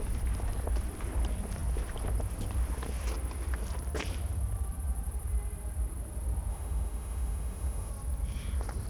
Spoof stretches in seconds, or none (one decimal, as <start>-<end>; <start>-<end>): 6.5-7.9